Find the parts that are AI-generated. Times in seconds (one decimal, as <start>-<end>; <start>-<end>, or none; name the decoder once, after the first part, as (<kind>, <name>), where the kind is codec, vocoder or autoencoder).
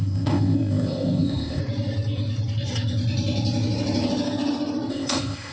0.0-1.6 (codec, ZipCodec); 4.9-5.5